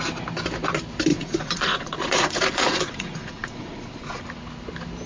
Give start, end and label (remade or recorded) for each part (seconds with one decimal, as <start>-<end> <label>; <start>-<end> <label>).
0.0-1.1 recorded; 1.1-4.2 remade; 4.2-5.1 recorded